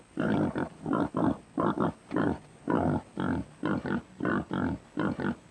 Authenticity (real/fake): real